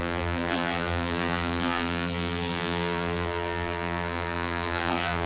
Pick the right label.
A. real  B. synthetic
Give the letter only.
B